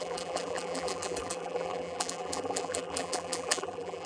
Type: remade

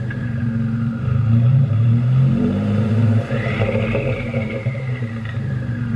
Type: remade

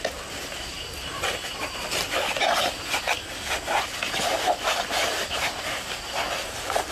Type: recorded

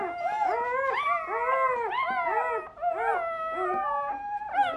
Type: recorded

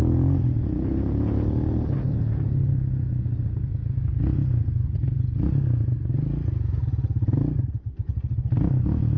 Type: recorded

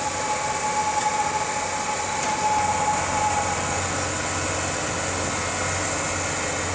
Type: recorded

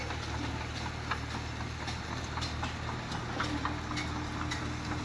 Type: recorded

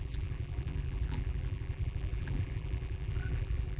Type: remade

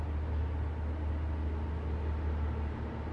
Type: recorded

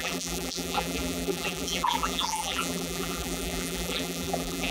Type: remade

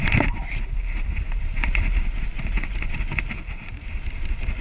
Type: recorded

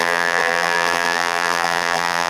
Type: remade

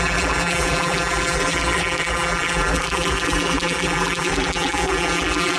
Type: remade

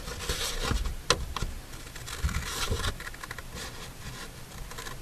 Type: recorded